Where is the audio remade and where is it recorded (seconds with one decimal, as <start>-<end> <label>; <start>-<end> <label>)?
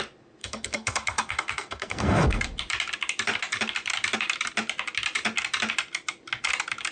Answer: 0.0-0.4 recorded; 0.4-2.4 remade; 2.4-6.9 recorded